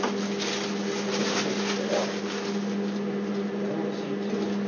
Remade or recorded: recorded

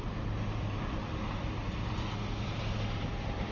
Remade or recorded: remade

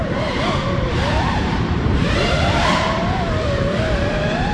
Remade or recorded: remade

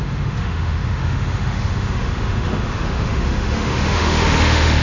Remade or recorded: remade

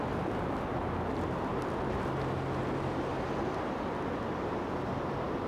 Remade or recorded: remade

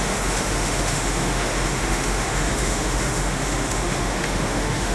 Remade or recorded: remade